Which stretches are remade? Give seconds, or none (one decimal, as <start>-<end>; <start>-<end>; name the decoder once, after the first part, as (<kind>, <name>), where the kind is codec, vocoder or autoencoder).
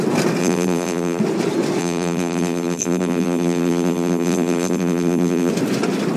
0.4-1.2 (vocoder, BigVGAN v2); 1.8-5.5